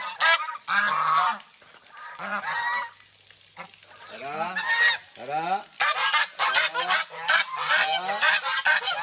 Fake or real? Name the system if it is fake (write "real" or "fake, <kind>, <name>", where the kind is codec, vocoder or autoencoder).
real